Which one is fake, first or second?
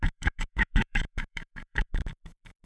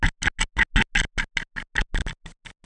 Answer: first